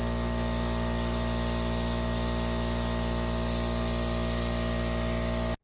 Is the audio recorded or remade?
recorded